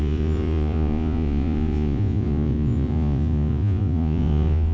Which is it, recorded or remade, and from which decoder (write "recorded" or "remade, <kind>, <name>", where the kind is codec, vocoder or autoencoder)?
remade, vocoder, Vocos